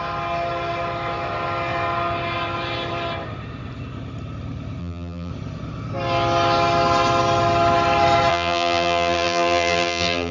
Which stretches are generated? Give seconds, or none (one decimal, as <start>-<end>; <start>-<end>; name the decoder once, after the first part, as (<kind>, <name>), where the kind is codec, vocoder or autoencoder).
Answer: 4.8-5.3 (vocoder, BigVGAN v2); 8.3-10.3